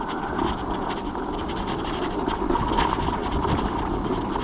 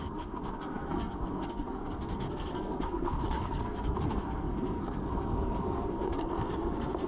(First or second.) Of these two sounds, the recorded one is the first